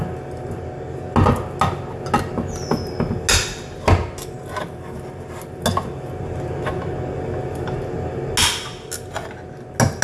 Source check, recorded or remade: recorded